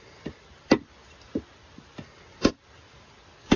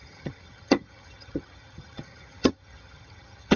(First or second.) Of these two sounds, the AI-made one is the second